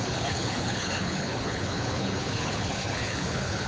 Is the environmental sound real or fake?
fake